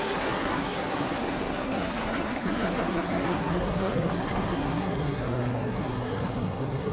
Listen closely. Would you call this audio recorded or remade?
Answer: remade